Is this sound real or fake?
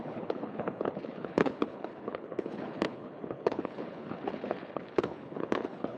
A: fake